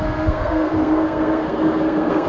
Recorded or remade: remade